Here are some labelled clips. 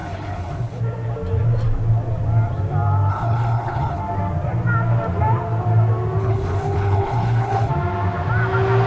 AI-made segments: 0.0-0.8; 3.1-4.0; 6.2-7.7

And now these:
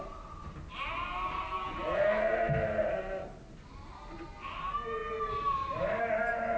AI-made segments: none

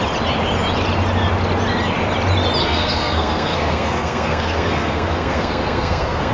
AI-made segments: 2.6-6.3

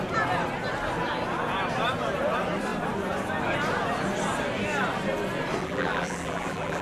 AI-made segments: 5.6-6.8